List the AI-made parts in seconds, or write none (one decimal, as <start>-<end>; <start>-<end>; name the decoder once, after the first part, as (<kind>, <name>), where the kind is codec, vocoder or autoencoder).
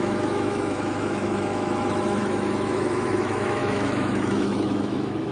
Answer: 0.0-5.3 (autoencoder, DAC-VAE)